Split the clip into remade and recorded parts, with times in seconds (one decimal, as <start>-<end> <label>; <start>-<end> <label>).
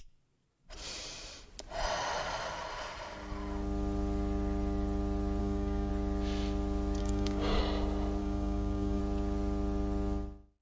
0.0-5.4 recorded; 5.4-5.9 remade; 5.9-7.0 recorded; 7.0-7.6 remade; 7.6-8.2 recorded; 8.2-9.0 remade; 9.0-10.6 recorded